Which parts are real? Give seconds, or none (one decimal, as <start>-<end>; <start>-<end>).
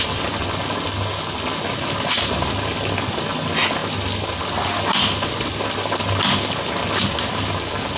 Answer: 0.0-8.0